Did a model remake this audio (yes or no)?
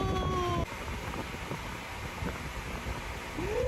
no